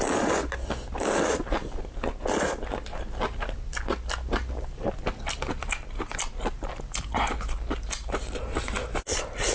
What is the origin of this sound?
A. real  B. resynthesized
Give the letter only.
A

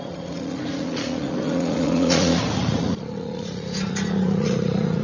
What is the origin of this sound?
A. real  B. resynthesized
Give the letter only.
B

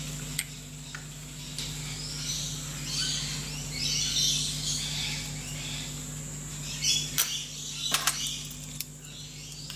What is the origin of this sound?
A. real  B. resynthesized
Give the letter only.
A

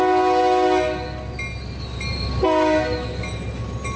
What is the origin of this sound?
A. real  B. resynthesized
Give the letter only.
A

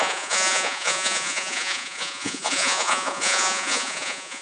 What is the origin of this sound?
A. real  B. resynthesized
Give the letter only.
B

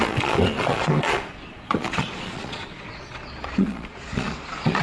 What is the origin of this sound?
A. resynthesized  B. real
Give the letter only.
A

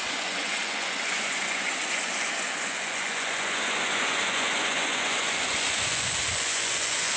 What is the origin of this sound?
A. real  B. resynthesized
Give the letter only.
B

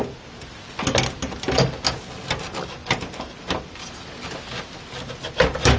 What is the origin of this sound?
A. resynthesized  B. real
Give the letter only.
B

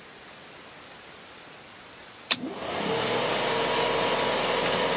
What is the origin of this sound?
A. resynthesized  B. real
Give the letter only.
B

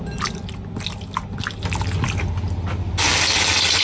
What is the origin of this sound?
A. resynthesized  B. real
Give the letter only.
B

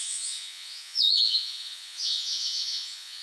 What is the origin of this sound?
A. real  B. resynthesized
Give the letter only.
B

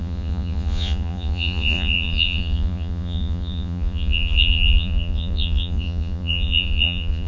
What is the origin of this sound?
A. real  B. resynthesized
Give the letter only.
B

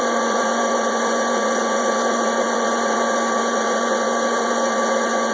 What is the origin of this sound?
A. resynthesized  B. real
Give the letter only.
A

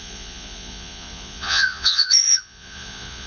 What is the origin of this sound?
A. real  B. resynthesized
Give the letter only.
B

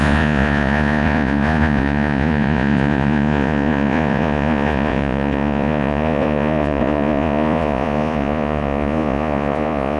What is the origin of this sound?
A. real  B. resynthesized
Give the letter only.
B